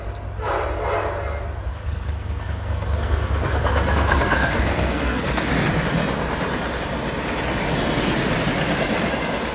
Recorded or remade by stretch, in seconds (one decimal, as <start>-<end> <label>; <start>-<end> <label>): 0.0-1.7 recorded; 1.7-5.5 remade; 5.5-9.5 recorded